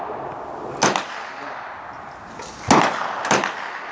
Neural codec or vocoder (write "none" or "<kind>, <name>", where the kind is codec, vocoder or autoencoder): none